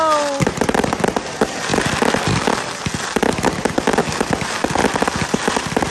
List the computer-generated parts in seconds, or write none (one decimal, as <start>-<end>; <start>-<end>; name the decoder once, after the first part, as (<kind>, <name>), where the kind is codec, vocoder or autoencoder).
1.7-2.3 (vocoder, BigVGAN v2)